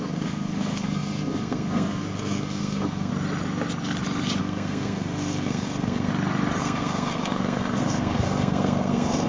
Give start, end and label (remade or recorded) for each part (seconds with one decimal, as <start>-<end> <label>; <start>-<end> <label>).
0.0-3.1 remade; 3.1-4.4 recorded; 4.4-6.1 remade; 6.1-6.6 recorded; 6.6-9.3 remade